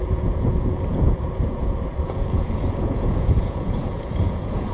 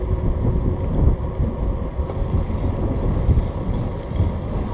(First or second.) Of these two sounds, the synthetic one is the first